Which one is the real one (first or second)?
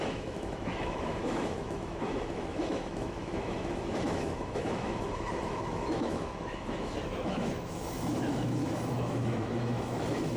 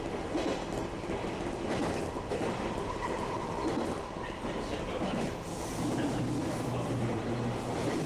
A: second